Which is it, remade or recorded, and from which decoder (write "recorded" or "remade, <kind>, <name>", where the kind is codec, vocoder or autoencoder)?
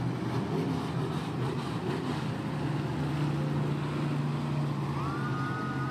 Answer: recorded